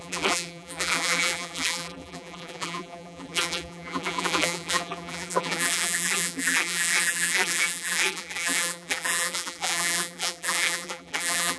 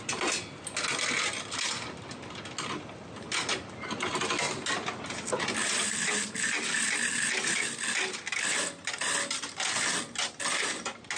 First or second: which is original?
second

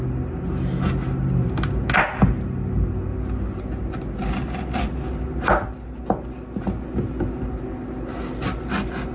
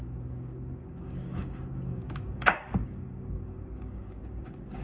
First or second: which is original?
first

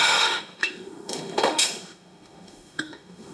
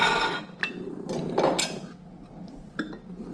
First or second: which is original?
second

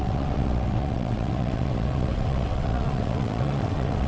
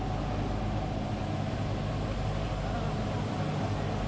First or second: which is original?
second